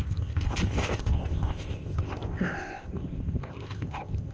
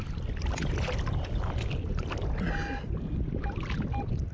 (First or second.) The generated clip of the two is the first